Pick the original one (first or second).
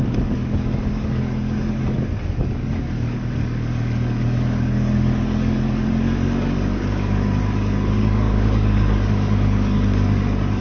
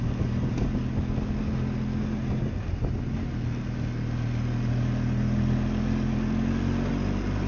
second